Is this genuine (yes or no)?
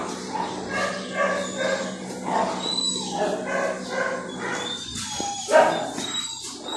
yes